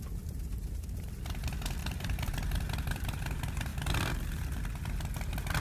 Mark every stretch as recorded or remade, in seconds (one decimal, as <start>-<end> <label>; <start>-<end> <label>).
0.0-3.7 remade; 3.7-5.6 recorded